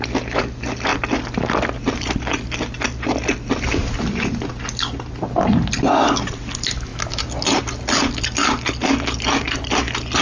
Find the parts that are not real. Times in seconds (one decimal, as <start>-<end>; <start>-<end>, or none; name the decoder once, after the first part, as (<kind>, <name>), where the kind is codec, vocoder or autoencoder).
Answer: none